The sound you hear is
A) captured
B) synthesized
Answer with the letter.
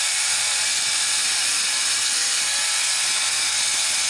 B